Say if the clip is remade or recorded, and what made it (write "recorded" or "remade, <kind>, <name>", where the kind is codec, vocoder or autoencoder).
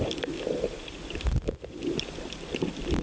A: recorded